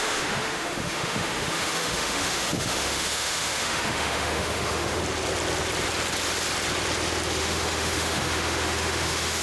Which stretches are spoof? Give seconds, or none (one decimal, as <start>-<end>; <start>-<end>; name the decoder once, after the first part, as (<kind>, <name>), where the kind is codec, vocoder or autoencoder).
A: 0.0-5.0 (autoencoder, DAC-VAE); 7.4-9.4